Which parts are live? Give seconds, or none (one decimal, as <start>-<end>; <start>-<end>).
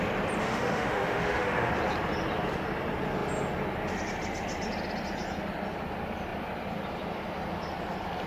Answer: 0.0-0.4; 1.7-8.3